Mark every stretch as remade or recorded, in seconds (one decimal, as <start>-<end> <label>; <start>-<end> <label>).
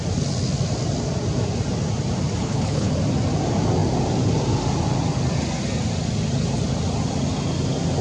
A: 0.0-2.4 recorded; 2.4-2.9 remade; 2.9-8.0 recorded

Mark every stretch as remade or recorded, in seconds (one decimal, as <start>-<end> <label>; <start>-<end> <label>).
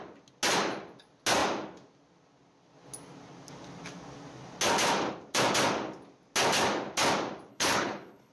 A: 0.0-7.5 recorded; 7.5-8.3 remade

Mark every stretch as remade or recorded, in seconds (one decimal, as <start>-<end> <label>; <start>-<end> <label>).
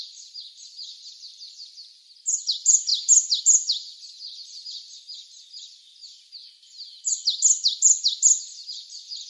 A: 0.0-9.3 recorded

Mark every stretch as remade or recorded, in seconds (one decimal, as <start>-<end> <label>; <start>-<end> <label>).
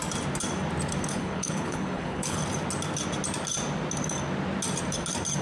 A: 0.0-1.1 recorded; 1.1-2.4 remade; 2.4-5.4 recorded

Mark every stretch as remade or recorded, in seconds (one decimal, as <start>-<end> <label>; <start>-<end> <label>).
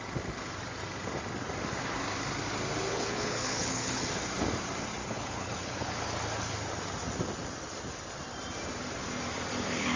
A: 0.0-2.9 recorded; 2.9-4.0 remade; 4.0-5.0 recorded; 5.0-6.0 remade; 6.0-10.0 recorded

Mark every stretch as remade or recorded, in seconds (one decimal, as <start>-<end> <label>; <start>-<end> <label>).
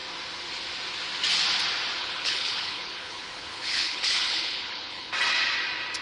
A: 0.0-2.0 recorded; 2.0-5.1 remade; 5.1-6.0 recorded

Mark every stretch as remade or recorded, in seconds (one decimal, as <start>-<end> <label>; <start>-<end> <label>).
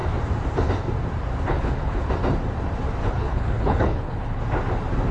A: 0.0-1.5 recorded; 1.5-2.1 remade; 2.1-3.0 recorded; 3.0-4.4 remade; 4.4-5.1 recorded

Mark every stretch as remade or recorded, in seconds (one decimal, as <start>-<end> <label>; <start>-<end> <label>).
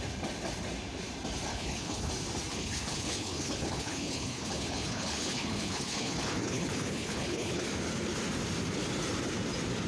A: 0.0-1.5 recorded; 1.5-2.1 remade; 2.1-2.5 recorded; 2.5-7.6 remade; 7.6-9.9 recorded